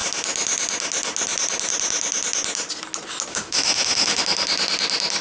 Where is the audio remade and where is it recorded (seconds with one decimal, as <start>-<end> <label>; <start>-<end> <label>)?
0.0-3.3 recorded; 3.3-4.2 remade; 4.2-5.2 recorded